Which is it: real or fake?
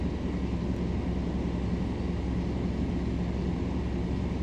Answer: real